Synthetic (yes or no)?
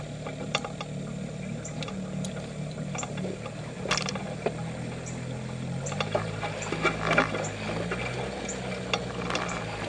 no